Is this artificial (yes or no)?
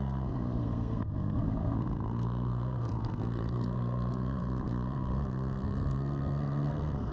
yes